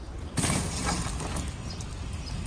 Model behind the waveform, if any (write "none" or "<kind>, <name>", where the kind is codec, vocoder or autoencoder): none